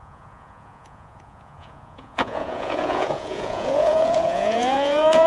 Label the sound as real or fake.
fake